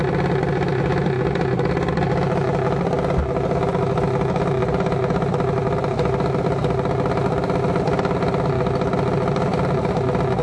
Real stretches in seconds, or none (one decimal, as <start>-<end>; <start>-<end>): 0.0-10.4